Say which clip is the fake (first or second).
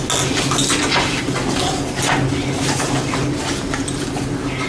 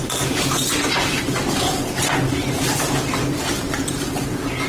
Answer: second